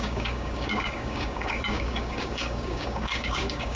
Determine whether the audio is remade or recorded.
remade